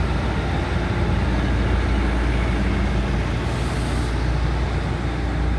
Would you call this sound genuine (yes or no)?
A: yes